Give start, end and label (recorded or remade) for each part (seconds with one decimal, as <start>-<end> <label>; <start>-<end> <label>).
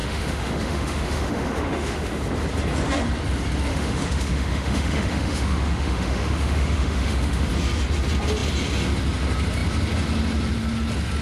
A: 0.0-2.2 remade; 2.2-3.7 recorded; 3.7-7.5 remade; 7.5-11.2 recorded